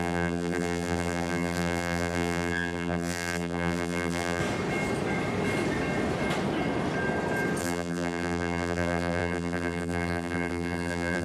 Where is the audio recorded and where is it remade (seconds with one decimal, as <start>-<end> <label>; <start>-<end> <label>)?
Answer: 0.0-4.4 remade; 4.4-7.6 recorded; 7.6-11.2 remade